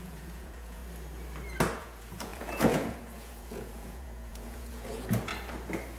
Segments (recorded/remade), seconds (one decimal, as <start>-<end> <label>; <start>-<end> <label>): 0.0-0.8 remade; 0.8-1.8 recorded; 1.8-5.3 remade; 5.3-6.0 recorded